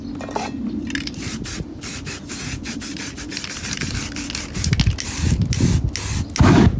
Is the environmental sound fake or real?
real